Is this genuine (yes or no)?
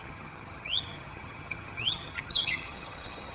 no